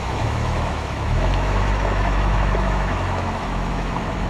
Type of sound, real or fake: fake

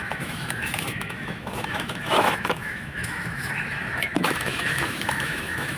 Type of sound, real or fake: fake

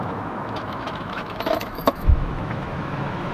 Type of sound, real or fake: fake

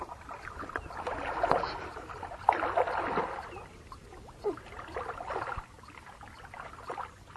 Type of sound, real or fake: real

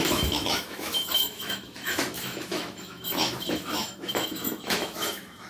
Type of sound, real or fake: fake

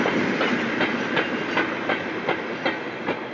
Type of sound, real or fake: real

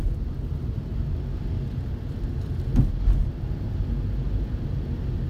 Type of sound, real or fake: real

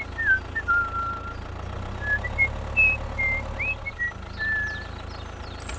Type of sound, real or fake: real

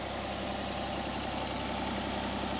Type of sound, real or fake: real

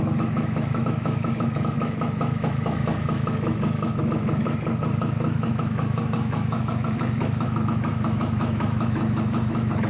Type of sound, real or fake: fake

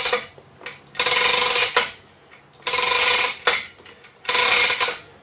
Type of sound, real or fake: real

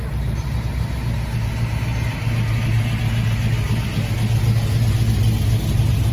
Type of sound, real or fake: real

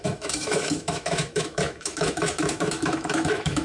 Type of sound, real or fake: fake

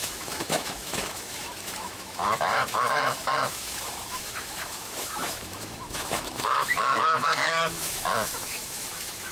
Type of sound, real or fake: fake